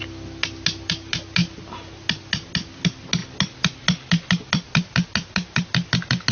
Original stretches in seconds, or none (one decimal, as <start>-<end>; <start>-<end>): 0.0-6.3